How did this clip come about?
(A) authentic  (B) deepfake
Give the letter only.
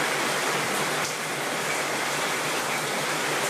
B